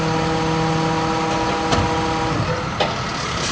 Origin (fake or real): real